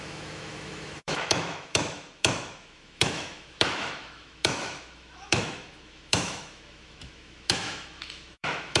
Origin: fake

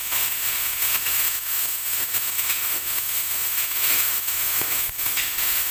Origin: fake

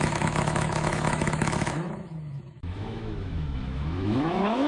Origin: fake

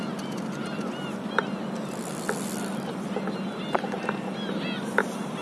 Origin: real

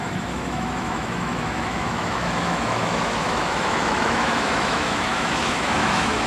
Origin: fake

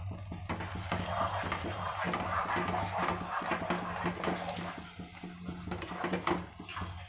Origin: real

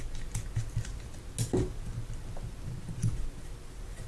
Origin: real